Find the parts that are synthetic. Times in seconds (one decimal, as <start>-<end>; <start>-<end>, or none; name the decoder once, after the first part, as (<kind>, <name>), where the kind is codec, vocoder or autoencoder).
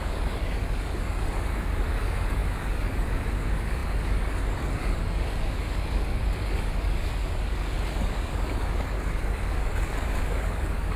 0.0-11.0 (codec, DAC)